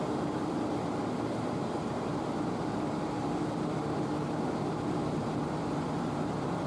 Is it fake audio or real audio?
fake